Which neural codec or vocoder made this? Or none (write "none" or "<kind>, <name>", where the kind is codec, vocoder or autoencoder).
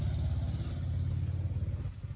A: none